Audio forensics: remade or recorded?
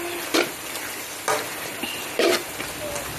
recorded